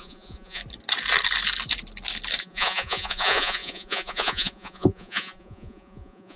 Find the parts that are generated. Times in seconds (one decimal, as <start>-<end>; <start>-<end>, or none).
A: 0.0-0.6; 2.4-6.4